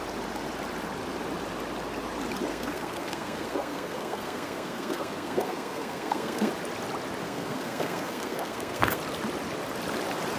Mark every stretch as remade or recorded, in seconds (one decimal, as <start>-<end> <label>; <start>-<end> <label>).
0.0-2.5 recorded; 2.5-6.5 remade; 6.5-7.2 recorded; 7.2-9.0 remade; 9.0-10.4 recorded